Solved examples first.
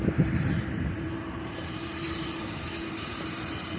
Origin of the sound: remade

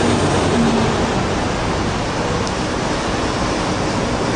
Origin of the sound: recorded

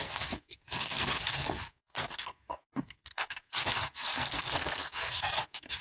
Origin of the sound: remade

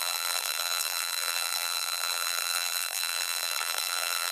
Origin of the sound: remade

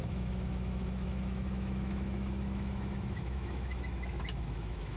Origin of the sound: remade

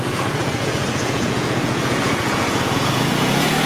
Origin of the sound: remade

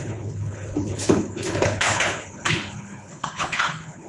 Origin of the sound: remade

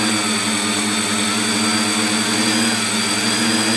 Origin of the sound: recorded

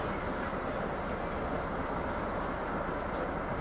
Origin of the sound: recorded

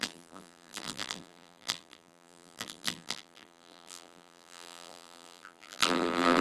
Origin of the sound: remade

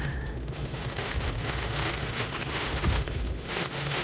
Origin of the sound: remade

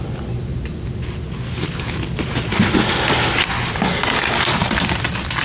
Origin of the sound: recorded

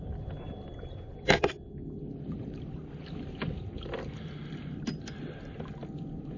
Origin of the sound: recorded